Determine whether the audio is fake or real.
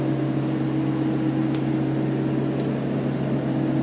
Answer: real